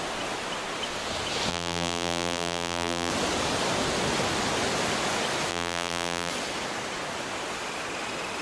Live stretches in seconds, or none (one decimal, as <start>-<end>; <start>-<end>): 0.0-1.5; 3.1-5.5; 6.3-8.4